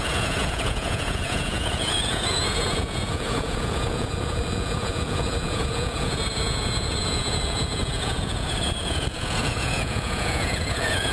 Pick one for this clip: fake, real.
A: fake